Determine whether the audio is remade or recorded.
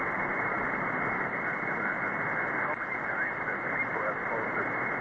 recorded